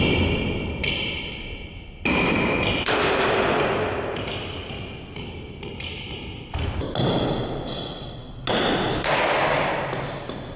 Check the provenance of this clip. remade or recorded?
recorded